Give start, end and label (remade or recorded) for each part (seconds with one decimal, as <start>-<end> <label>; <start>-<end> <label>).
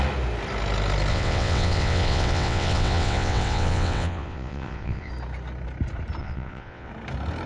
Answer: 0.0-1.1 recorded; 1.1-5.1 remade; 5.1-6.2 recorded; 6.2-6.9 remade; 6.9-7.5 recorded